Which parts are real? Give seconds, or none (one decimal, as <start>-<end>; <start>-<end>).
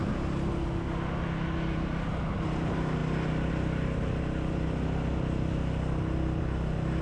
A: 0.0-7.0